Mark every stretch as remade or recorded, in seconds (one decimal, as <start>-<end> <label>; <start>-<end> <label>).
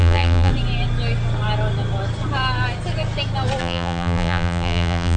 0.0-0.5 remade; 0.5-3.6 recorded; 3.6-5.2 remade